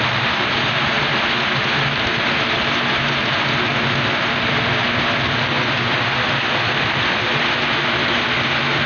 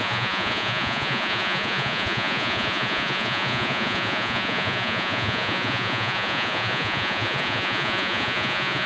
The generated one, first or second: second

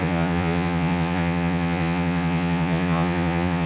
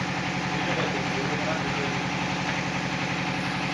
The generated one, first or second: first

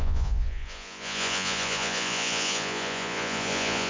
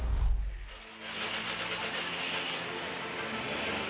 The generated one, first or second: first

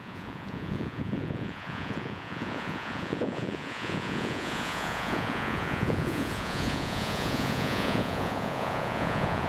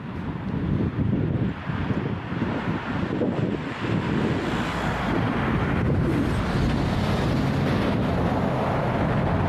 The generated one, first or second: first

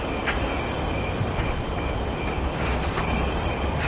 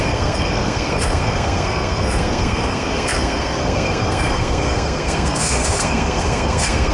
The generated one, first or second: second